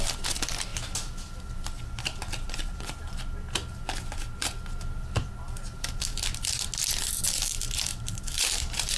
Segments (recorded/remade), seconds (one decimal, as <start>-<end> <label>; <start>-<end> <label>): 0.0-7.9 recorded; 7.9-9.0 remade